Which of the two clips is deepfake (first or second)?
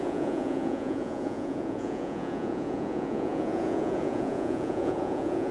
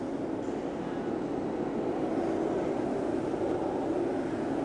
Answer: first